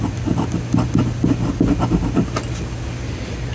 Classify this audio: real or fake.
real